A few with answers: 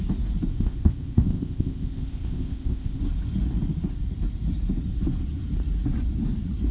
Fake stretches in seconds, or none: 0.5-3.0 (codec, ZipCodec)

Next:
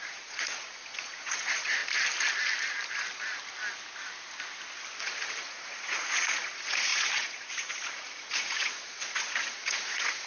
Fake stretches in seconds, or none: 0.0-1.8 (vocoder, Vocos); 5.0-10.3

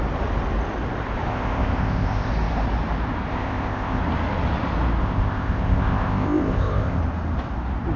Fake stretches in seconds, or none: 1.3-2.3 (codec, ZipCodec); 3.3-4.0; 5.0-7.0

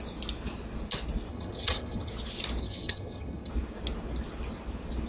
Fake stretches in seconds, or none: 1.3-2.1 (vocoder, HiFi-GAN); 2.6-3.5